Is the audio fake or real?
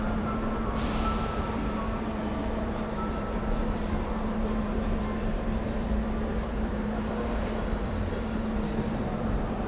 fake